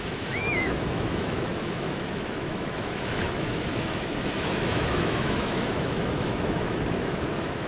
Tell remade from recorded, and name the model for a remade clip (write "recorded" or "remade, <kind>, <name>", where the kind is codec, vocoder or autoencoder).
remade, autoencoder, DAC-VAE